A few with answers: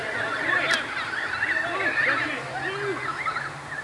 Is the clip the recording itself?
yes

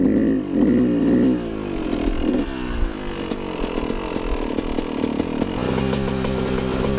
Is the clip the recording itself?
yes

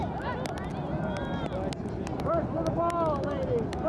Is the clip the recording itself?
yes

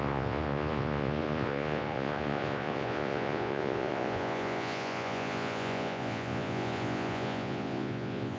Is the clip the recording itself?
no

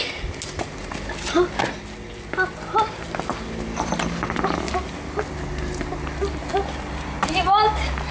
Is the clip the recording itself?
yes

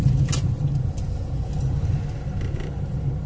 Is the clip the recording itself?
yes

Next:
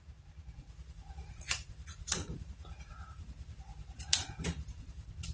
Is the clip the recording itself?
no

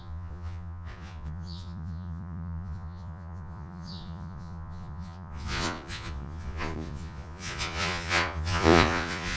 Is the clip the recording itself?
no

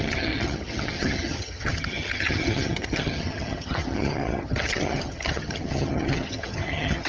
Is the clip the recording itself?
no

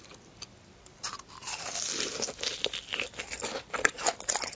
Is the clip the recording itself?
no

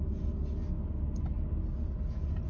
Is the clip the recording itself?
yes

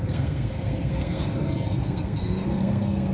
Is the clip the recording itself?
no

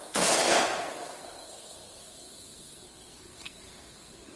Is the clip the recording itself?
no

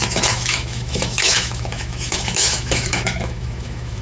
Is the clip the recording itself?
no